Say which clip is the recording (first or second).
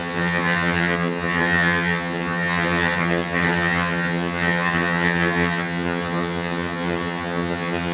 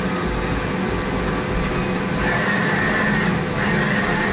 second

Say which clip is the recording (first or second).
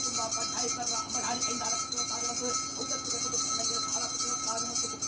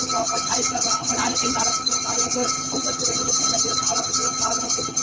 first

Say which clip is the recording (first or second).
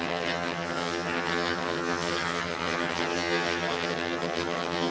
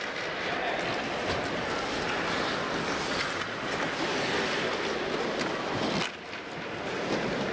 second